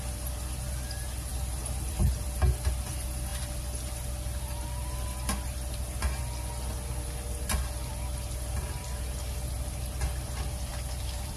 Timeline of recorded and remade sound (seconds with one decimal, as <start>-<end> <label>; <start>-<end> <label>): 0.0-1.3 recorded; 1.3-2.3 remade; 2.3-10.7 recorded; 10.7-11.4 remade